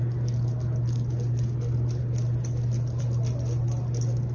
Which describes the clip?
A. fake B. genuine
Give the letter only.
B